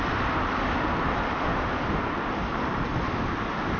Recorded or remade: recorded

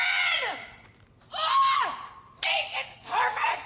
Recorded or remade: recorded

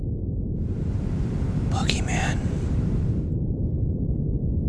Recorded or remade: recorded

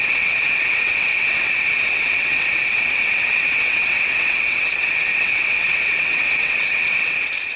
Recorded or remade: remade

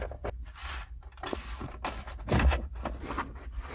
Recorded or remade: recorded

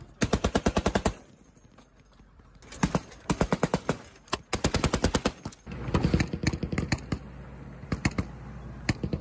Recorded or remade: recorded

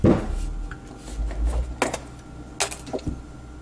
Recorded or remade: recorded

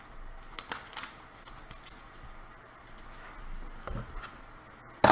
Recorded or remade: recorded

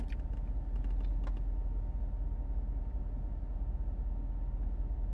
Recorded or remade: recorded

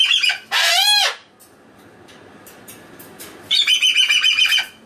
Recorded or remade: recorded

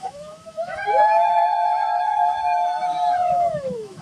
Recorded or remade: remade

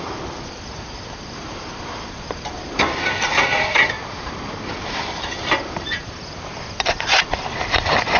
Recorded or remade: remade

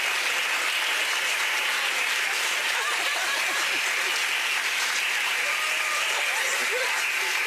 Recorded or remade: recorded